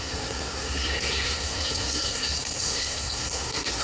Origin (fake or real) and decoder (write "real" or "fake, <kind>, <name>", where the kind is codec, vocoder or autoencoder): fake, codec, SNAC